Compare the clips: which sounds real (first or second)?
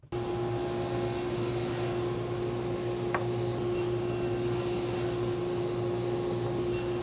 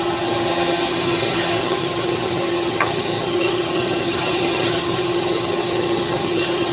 first